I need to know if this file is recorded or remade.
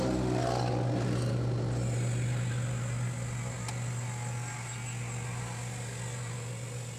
recorded